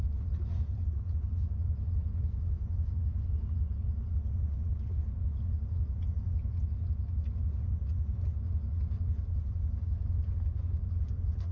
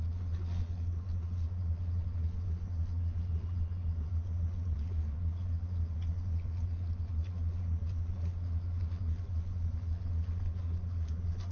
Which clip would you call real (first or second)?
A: first